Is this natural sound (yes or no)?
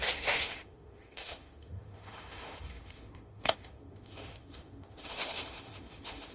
no